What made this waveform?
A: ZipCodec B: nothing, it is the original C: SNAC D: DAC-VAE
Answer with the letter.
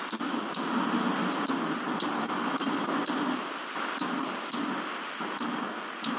B